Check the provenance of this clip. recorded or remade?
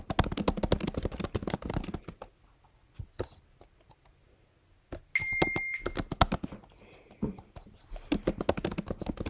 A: recorded